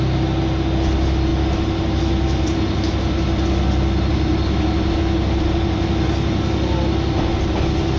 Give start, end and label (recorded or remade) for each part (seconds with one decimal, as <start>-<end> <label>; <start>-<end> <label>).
0.0-8.0 recorded